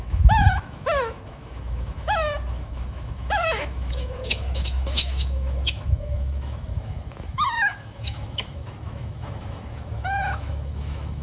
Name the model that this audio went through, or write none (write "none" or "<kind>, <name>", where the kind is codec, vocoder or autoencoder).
autoencoder, DAC-VAE